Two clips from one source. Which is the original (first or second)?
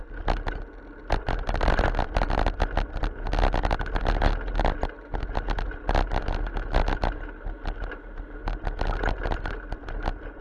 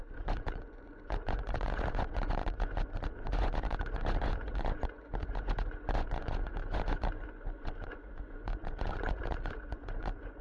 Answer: first